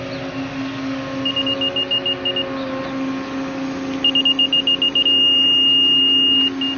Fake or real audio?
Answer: real